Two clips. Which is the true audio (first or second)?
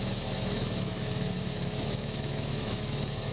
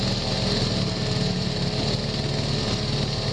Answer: second